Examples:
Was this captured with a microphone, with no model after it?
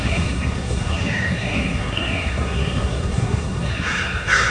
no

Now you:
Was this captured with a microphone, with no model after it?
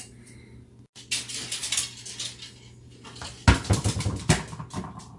yes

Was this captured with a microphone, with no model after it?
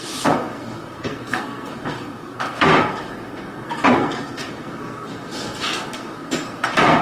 no